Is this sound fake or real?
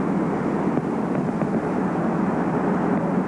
real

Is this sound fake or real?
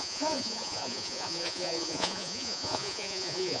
fake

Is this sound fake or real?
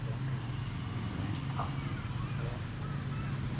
real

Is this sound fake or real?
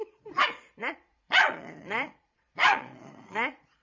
fake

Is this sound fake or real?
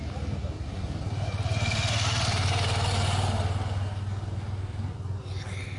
real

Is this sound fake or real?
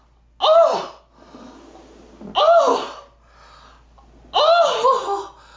real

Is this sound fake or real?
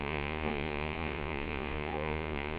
fake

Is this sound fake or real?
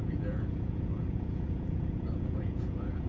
fake